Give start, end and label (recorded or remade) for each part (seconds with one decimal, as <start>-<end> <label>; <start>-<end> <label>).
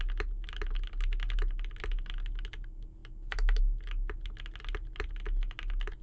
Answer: 0.0-6.0 recorded